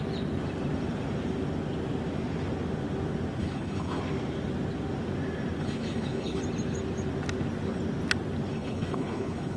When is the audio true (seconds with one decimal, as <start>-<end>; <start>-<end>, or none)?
0.0-3.4; 4.0-5.6; 6.4-8.5